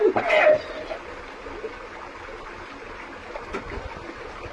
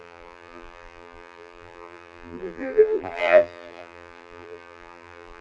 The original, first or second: first